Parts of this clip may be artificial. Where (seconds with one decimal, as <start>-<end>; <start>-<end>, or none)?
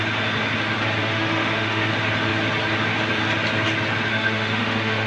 1.0-1.9; 4.1-5.1